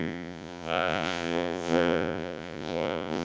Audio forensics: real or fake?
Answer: fake